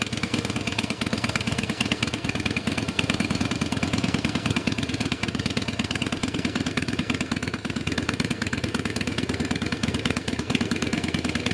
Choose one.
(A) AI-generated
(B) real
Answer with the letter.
A